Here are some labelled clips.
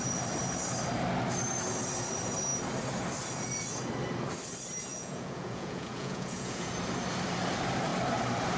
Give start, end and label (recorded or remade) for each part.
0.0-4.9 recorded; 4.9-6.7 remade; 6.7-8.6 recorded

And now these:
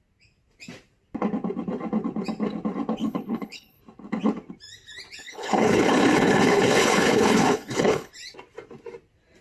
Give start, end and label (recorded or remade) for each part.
0.0-3.0 recorded; 3.0-3.8 remade; 3.8-5.2 recorded; 5.2-8.1 remade; 8.1-9.4 recorded

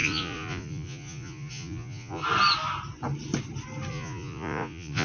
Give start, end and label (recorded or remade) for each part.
0.0-2.2 remade; 2.2-3.9 recorded; 3.9-5.0 remade

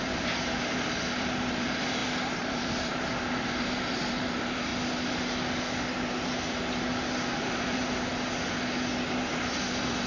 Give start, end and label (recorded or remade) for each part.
0.0-2.0 remade; 2.0-2.5 recorded; 2.5-4.7 remade; 4.7-7.4 recorded; 7.4-8.1 remade; 8.1-9.4 recorded; 9.4-10.1 remade

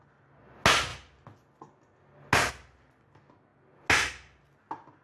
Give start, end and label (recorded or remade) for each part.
0.0-5.0 recorded

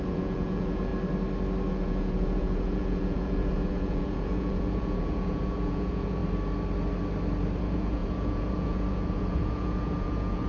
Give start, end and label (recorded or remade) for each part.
0.0-0.9 remade; 0.9-1.7 recorded; 1.7-6.2 remade; 6.2-7.6 recorded; 7.6-10.5 remade

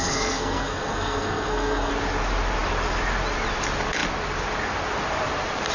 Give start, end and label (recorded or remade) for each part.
0.0-1.9 remade; 1.9-5.7 recorded